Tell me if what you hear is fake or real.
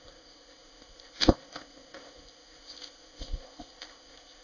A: fake